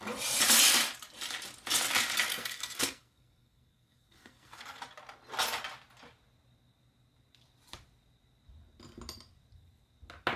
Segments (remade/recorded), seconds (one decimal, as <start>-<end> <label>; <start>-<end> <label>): 0.0-2.3 recorded; 2.3-4.8 remade; 4.8-10.4 recorded